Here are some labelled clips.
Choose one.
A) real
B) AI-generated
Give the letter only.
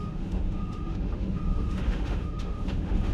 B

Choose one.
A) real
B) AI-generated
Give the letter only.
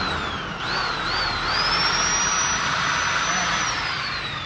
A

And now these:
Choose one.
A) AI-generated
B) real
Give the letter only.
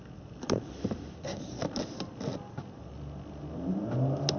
B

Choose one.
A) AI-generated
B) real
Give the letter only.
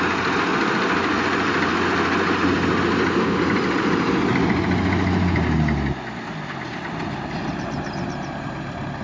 B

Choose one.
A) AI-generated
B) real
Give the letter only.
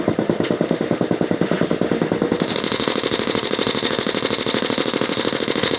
A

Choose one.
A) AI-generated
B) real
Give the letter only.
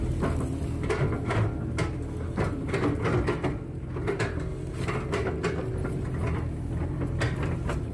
B